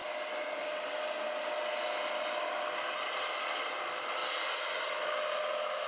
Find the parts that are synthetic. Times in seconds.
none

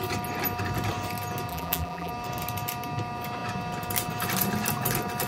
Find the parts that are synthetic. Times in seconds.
1.5-2.1 (vocoder, BigVGAN v2)

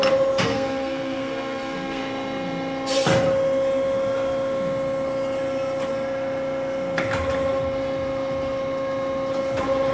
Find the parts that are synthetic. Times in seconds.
0.5-2.0 (codec, SNAC)

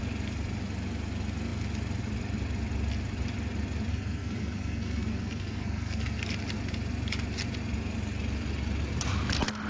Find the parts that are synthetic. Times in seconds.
3.9-6.2 (codec, SNAC)

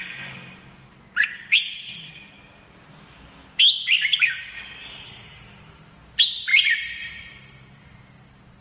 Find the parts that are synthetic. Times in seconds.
0.0-1.7 (vocoder, BigVGAN v2); 2.5-3.4; 4.9-8.6

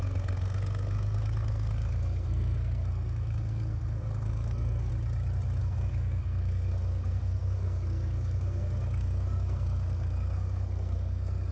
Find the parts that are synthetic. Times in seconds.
0.0-4.9 (codec, SNAC); 5.6-11.5

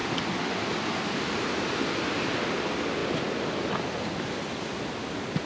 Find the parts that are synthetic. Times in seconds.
none